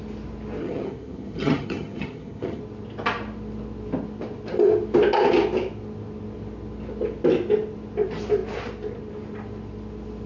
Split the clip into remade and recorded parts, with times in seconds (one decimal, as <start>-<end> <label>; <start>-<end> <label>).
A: 0.0-0.6 recorded; 0.6-2.6 remade; 2.6-10.3 recorded